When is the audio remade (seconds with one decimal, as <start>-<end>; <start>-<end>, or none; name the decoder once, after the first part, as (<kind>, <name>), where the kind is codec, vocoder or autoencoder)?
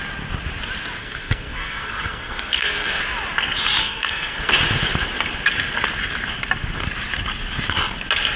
1.0-3.0 (codec, SNAC); 3.8-4.5